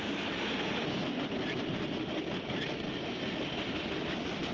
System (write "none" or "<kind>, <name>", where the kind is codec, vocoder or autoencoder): none